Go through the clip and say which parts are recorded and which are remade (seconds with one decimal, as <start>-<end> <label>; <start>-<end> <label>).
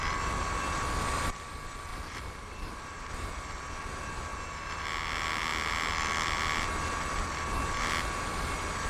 0.0-1.9 recorded; 1.9-3.3 remade; 3.3-8.9 recorded